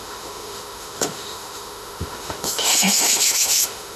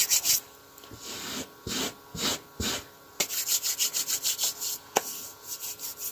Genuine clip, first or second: second